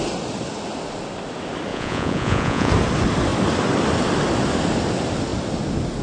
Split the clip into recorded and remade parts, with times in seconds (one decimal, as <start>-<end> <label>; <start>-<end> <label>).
0.0-1.7 recorded; 1.7-2.7 remade; 2.7-6.0 recorded

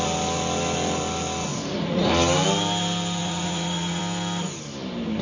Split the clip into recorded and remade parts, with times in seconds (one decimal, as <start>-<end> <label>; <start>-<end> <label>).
0.0-1.5 recorded; 1.5-2.1 remade; 2.1-3.2 recorded; 3.2-4.0 remade; 4.0-5.2 recorded

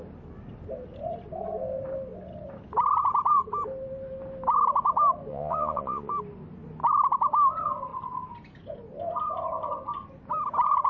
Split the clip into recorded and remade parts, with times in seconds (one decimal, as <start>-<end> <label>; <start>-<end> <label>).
0.0-5.3 recorded; 5.3-6.1 remade; 6.1-10.9 recorded

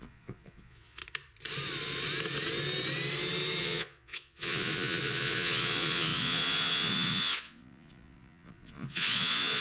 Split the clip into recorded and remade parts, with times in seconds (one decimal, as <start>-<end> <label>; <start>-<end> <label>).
0.0-1.0 remade; 1.0-3.6 recorded; 3.6-9.6 remade

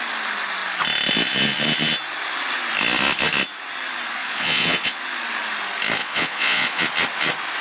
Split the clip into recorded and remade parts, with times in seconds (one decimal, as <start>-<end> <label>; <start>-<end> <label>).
0.0-4.2 recorded; 4.2-5.0 remade; 5.0-6.0 recorded; 6.0-6.8 remade; 6.8-7.6 recorded